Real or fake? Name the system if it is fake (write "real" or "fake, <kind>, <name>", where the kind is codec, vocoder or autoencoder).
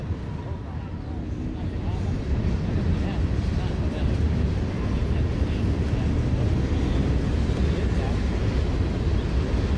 real